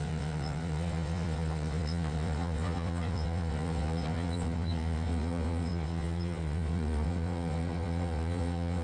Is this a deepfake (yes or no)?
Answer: yes